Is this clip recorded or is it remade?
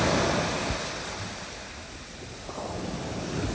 recorded